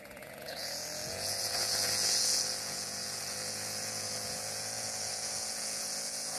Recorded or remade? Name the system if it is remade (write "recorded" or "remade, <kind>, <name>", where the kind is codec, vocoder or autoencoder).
remade, vocoder, Vocos